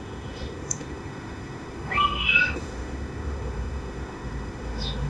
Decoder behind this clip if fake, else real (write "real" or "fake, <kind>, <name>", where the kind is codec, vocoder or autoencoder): fake, autoencoder, DAC-VAE